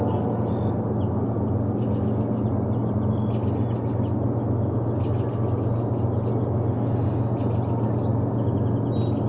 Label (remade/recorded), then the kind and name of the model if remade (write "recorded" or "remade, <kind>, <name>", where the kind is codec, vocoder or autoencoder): recorded